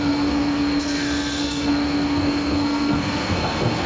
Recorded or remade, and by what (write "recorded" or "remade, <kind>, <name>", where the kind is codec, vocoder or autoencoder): remade, codec, SNAC